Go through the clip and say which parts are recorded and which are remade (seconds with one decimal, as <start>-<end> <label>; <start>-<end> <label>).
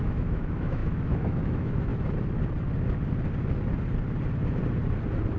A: 0.0-1.9 remade; 1.9-5.4 recorded